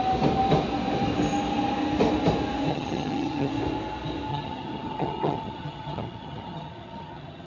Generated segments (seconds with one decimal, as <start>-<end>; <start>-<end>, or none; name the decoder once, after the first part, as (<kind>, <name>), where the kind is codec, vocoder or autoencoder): 2.7-3.5 (vocoder, HiFi-GAN); 4.3-7.5